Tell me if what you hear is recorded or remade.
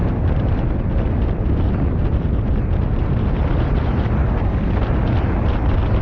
recorded